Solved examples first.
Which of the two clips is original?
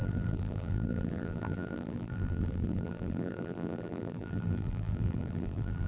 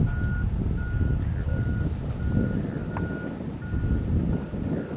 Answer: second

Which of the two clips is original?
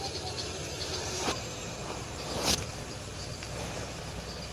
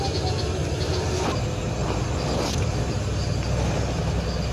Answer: second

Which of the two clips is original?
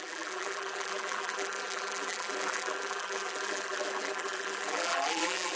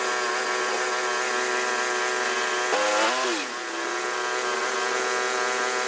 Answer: second